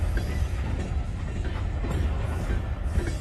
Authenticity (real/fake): real